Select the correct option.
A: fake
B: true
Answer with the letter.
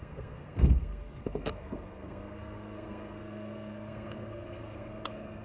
A